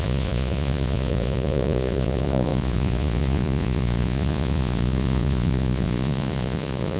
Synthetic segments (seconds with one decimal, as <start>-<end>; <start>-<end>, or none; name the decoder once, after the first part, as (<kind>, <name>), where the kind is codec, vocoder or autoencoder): 0.0-7.0 (vocoder, Vocos)